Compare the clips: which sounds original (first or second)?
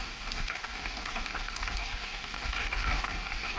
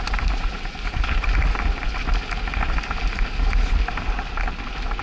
second